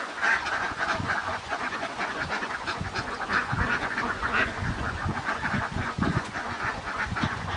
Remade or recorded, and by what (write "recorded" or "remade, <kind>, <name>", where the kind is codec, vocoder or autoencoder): remade, vocoder, Vocos